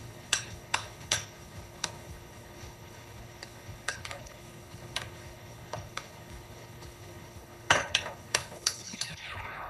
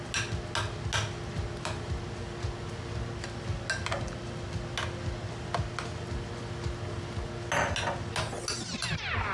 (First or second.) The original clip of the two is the second